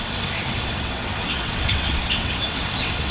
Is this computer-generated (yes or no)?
yes